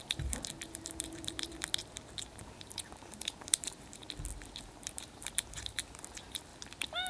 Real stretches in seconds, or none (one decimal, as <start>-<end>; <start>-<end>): 1.5-2.2; 4.0-4.5; 6.5-7.1